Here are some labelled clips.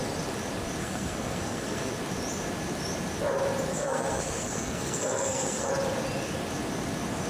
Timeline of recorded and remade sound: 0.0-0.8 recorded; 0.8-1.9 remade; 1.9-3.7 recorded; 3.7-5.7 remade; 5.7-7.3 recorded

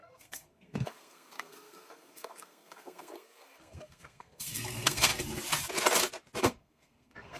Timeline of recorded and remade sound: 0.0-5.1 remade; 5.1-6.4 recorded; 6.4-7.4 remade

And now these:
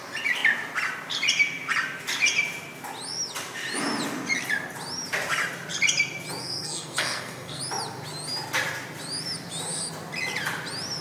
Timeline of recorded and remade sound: 0.0-6.4 recorded; 6.4-7.6 remade; 7.6-11.0 recorded

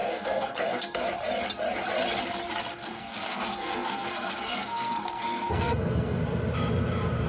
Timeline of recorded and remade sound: 0.0-1.1 remade; 1.1-2.7 recorded; 2.7-6.2 remade; 6.2-7.3 recorded